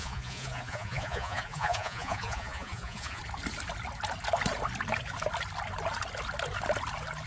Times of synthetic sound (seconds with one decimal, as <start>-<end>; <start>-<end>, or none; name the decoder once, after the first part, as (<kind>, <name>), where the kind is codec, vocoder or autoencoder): 0.0-3.2 (vocoder, Vocos)